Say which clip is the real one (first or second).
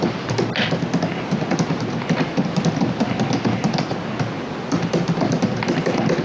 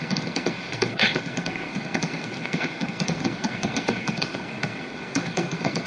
first